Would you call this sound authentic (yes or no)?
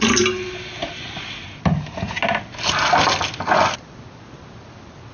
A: yes